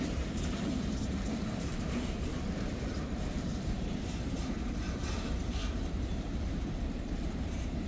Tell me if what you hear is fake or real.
fake